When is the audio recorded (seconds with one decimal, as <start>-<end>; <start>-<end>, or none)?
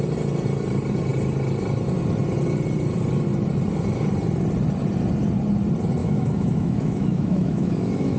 0.0-6.0